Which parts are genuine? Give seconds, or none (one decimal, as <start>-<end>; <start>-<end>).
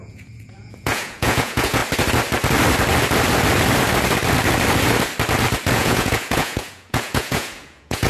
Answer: 1.8-5.7